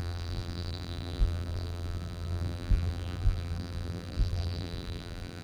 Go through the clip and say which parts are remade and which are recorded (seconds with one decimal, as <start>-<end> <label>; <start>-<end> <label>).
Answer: 0.0-5.4 remade